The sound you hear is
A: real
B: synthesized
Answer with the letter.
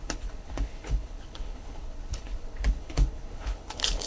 B